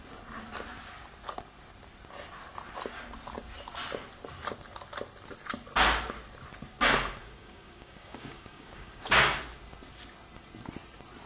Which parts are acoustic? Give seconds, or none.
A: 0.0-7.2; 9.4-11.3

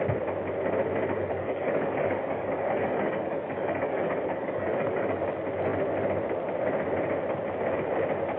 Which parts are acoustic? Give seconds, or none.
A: 0.0-1.2; 5.2-8.4

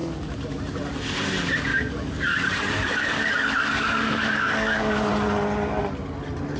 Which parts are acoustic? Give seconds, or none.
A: 0.6-1.7; 5.1-6.6

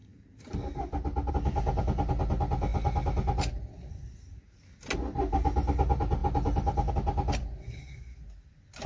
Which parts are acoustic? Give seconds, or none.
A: 0.0-8.9

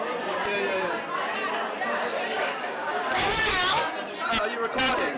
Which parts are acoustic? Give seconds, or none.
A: 0.0-2.3; 3.9-5.2

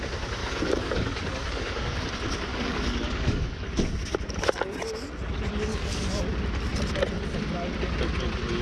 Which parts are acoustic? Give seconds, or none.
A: 0.0-0.4; 2.1-2.5; 3.7-5.7; 6.2-8.6

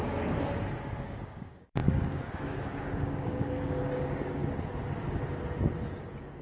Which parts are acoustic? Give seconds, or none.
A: 4.4-6.0

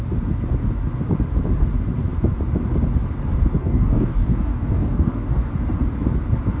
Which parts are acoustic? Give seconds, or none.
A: 0.0-3.6; 5.5-6.6